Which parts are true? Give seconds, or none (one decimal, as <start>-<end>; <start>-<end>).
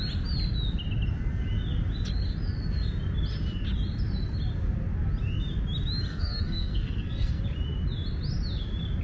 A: 0.0-6.1; 7.4-9.0